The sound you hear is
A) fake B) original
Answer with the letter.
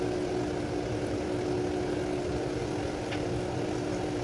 B